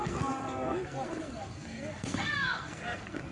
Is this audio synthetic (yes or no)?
yes